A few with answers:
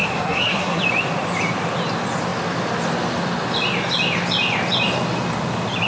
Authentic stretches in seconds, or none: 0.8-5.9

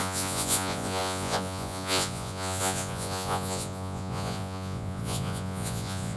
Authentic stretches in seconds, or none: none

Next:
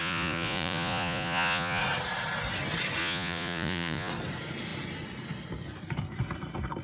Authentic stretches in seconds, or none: 1.8-3.0; 4.1-6.8

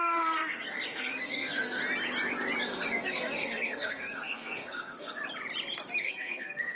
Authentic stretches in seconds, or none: 1.8-2.6; 5.2-6.0